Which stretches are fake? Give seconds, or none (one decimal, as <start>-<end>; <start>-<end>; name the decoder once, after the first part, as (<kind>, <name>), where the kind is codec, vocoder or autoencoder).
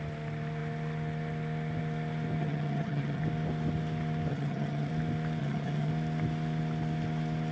2.4-3.2 (vocoder, HiFi-GAN); 4.3-4.9; 5.4-5.9